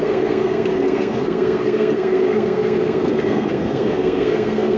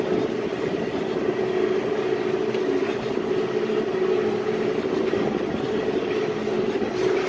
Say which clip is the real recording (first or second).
second